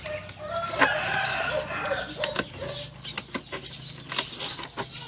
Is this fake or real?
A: real